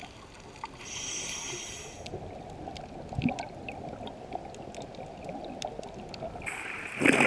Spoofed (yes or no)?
no